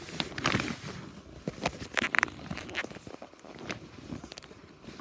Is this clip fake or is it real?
fake